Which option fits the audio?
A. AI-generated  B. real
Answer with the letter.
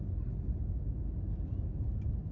B